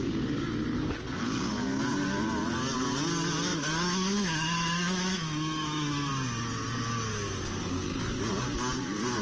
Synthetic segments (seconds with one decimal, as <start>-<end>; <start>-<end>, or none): 3.5-6.1